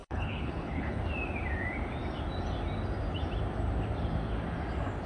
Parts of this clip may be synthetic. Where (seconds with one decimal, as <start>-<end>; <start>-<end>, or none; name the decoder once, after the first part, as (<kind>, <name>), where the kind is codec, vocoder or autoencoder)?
0.0-1.0 (codec, HILCodec)